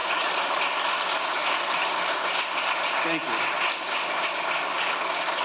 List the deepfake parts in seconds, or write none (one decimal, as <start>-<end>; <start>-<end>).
none